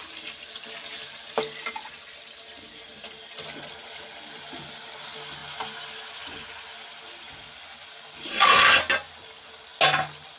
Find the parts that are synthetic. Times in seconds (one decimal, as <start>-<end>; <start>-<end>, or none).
8.3-8.8